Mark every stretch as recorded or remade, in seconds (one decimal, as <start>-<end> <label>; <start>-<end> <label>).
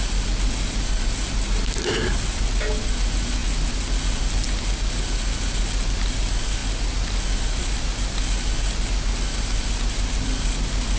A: 0.0-11.0 recorded